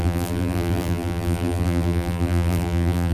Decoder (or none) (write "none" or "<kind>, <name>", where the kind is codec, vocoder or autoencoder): vocoder, BigVGAN v2